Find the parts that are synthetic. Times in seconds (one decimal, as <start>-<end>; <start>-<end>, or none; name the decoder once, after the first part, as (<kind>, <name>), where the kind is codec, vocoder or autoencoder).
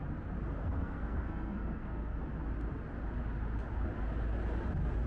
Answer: 0.6-2.2 (codec, SNAC)